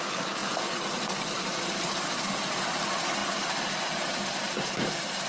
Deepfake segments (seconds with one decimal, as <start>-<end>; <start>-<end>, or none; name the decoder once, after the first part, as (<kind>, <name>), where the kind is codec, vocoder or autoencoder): none